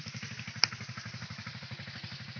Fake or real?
fake